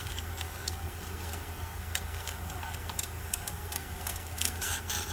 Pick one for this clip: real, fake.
fake